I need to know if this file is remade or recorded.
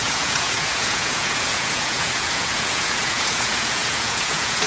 remade